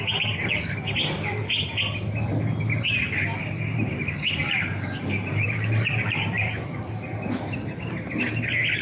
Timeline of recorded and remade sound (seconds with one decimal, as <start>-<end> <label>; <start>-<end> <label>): 0.0-3.4 recorded; 3.4-6.8 remade; 6.8-8.8 recorded